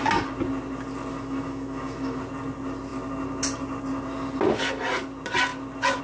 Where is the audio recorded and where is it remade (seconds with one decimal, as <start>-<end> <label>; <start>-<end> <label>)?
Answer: 0.0-1.1 recorded; 1.1-2.2 remade; 2.2-6.0 recorded